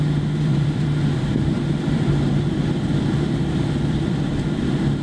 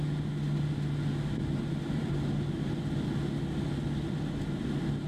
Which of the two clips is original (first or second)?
second